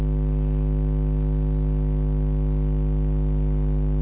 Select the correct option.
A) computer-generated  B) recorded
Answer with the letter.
B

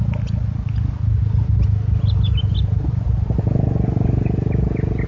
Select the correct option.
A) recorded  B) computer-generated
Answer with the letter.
A